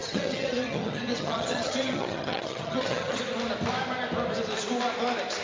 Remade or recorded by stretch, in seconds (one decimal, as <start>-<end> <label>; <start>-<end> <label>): 0.0-3.2 remade; 3.2-5.4 recorded